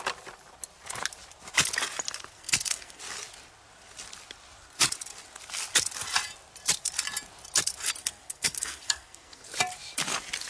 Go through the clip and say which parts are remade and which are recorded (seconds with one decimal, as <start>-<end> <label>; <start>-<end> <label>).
0.0-2.3 recorded; 2.3-3.0 remade; 3.0-8.0 recorded; 8.0-9.5 remade; 9.5-10.5 recorded